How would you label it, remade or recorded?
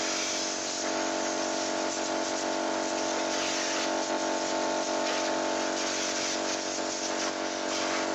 recorded